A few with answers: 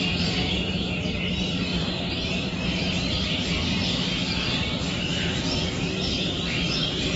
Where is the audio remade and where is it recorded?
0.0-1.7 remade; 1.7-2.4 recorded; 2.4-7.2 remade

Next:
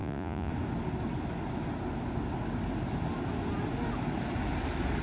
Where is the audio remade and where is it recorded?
0.0-0.5 remade; 0.5-5.0 recorded

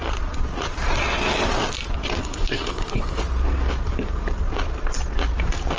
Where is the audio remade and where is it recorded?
0.0-2.2 recorded; 2.2-3.2 remade; 3.2-5.8 recorded

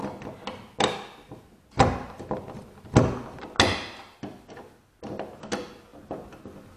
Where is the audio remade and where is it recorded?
0.0-6.8 recorded

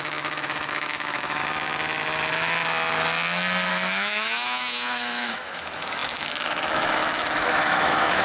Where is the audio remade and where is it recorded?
0.0-1.4 remade; 1.4-3.7 recorded; 3.7-8.2 remade